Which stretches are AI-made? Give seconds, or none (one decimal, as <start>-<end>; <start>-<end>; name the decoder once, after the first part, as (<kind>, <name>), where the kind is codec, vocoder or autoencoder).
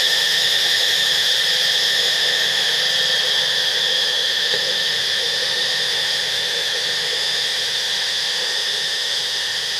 0.0-1.3 (autoencoder, DAC-VAE); 1.8-2.8; 3.5-9.8